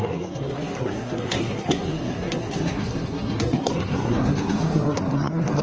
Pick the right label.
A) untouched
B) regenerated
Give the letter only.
B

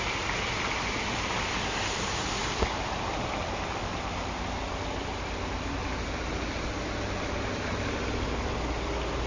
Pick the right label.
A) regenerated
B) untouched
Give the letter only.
B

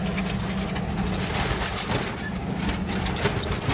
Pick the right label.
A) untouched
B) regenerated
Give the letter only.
A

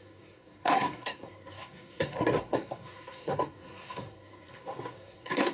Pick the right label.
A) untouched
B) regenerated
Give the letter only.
B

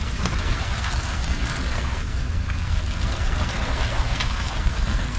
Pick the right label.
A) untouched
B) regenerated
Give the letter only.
B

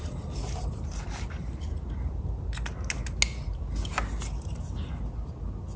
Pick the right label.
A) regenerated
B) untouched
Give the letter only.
B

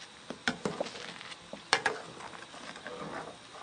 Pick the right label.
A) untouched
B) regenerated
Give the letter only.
A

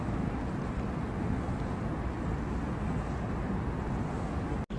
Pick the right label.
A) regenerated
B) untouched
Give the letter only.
B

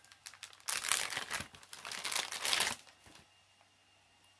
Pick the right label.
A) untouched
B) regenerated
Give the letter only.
A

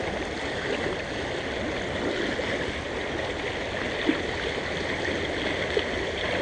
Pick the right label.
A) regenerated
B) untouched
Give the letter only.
B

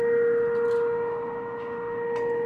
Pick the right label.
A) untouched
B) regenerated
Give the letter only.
A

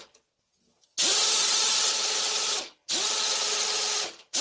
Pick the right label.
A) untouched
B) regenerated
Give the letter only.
A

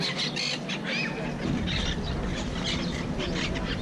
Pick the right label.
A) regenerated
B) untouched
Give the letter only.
B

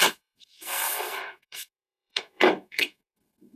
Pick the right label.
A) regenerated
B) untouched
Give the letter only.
A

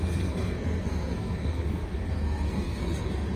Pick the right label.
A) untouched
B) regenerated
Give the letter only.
B